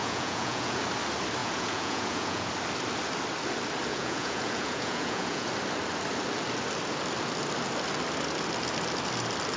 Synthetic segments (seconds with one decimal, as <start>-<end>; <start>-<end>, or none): 0.0-0.8; 1.4-2.5; 3.9-5.5